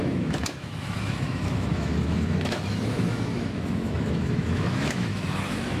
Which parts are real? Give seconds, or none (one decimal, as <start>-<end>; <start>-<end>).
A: none